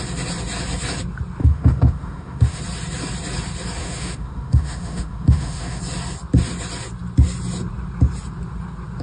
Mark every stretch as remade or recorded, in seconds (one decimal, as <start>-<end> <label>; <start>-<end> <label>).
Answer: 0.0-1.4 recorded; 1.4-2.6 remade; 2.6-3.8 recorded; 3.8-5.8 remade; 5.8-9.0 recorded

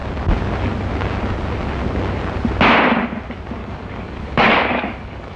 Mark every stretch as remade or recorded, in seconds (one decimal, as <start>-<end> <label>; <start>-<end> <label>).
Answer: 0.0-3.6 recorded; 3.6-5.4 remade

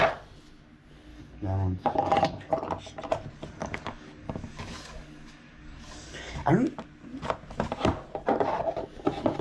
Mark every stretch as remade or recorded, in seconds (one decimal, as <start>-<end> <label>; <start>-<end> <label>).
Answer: 0.0-1.1 recorded; 1.1-2.5 remade; 2.5-3.6 recorded; 3.6-6.5 remade; 6.5-9.4 recorded

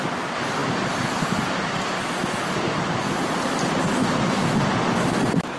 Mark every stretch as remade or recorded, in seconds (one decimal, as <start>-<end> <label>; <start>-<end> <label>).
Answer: 0.0-5.6 recorded

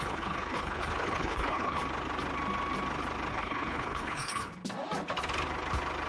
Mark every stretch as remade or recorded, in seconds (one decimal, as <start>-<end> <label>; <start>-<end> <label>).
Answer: 0.0-1.8 remade; 1.8-3.3 recorded; 3.3-4.5 remade; 4.5-6.1 recorded